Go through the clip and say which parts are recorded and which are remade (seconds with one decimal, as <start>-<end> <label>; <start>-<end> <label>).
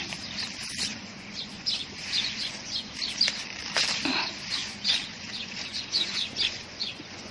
0.0-0.9 recorded; 0.9-2.9 remade; 2.9-4.6 recorded; 4.6-7.3 remade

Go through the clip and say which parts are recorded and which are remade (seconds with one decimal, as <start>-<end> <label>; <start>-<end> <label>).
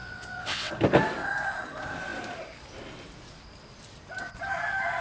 0.0-0.7 remade; 0.7-5.0 recorded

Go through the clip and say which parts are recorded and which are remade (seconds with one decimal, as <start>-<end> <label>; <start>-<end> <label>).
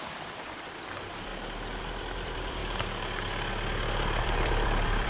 0.0-1.3 remade; 1.3-1.8 recorded; 1.8-2.6 remade; 2.6-4.2 recorded; 4.2-5.1 remade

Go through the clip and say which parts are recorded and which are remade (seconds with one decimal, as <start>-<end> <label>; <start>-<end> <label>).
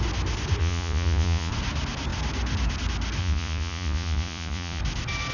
0.0-0.6 recorded; 0.6-1.5 remade; 1.5-3.2 recorded; 3.2-4.8 remade; 4.8-5.3 recorded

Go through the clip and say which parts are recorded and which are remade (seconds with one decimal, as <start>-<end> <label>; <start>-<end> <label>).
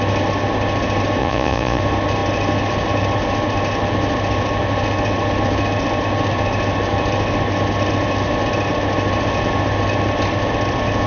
0.0-1.2 recorded; 1.2-1.8 remade; 1.8-11.1 recorded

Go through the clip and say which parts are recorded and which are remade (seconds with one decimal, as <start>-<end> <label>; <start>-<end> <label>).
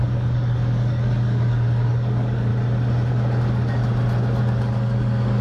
0.0-2.5 remade; 2.5-3.1 recorded; 3.1-3.8 remade; 3.8-4.4 recorded; 4.4-5.4 remade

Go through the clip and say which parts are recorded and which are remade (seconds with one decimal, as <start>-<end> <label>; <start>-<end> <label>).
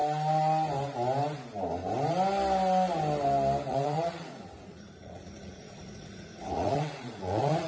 0.0-3.7 recorded; 3.7-7.7 remade